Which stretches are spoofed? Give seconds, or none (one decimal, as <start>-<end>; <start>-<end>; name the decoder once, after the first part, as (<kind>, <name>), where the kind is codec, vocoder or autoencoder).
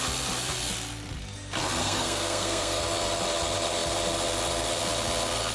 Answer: 1.8-2.8 (codec, SNAC)